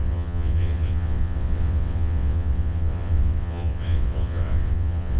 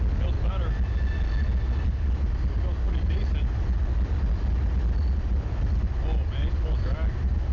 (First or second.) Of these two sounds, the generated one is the first